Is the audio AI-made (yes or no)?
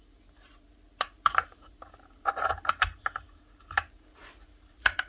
yes